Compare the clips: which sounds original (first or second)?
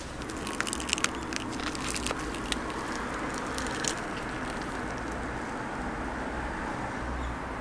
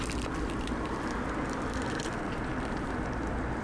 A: first